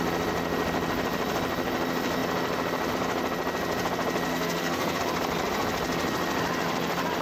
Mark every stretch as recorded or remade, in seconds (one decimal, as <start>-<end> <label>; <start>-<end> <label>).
0.0-4.3 recorded; 4.3-5.0 remade; 5.0-7.2 recorded